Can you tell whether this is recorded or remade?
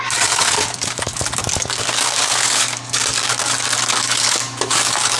remade